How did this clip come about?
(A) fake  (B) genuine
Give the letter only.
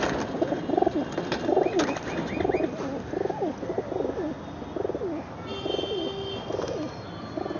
B